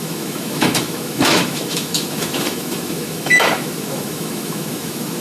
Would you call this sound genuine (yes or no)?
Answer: no